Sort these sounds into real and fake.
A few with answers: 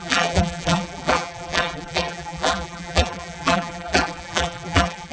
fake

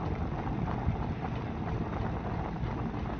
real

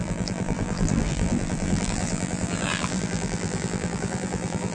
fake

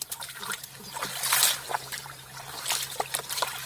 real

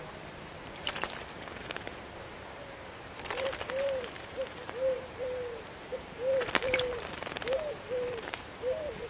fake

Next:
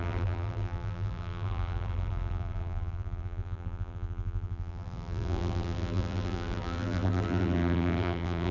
fake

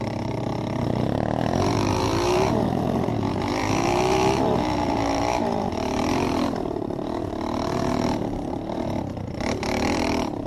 fake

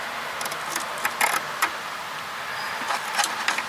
real